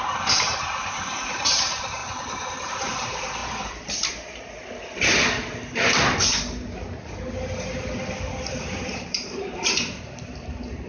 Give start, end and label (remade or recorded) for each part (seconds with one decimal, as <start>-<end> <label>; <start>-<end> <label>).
0.0-2.0 remade; 2.0-2.6 recorded; 2.6-3.4 remade; 3.4-8.5 recorded; 8.5-10.9 remade